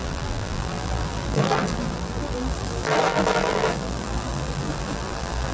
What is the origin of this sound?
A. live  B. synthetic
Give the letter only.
B